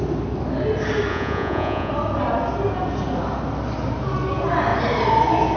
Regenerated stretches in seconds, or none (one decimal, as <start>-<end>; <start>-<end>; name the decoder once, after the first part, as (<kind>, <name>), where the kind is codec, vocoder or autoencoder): 1.1-1.9 (vocoder, Vocos)